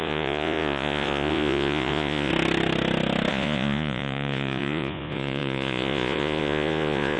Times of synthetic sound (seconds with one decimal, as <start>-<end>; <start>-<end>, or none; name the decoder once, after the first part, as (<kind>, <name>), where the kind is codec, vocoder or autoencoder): 0.0-2.3 (vocoder, Vocos); 3.3-7.2